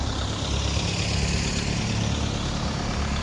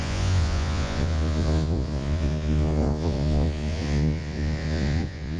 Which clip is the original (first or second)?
first